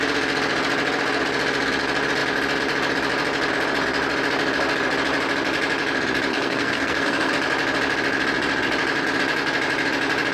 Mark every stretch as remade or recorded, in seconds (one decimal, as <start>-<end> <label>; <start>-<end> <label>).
0.0-6.3 recorded; 6.3-7.3 remade; 7.3-10.3 recorded